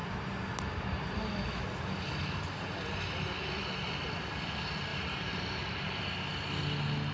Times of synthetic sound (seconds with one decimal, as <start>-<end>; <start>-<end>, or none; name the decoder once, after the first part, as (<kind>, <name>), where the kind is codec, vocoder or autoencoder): 4.9-6.0 (vocoder, BigVGAN v2)